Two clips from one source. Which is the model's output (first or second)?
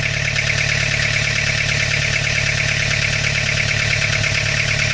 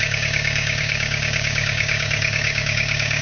second